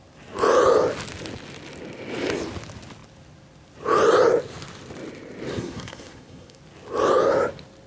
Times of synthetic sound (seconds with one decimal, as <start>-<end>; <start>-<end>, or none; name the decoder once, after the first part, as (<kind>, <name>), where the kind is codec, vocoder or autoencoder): 5.5-6.6 (codec, SNAC)